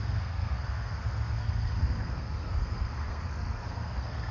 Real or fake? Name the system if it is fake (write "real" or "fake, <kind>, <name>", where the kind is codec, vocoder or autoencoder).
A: fake, codec, SNAC